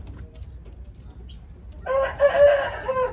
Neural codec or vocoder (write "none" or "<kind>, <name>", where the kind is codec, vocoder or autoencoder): none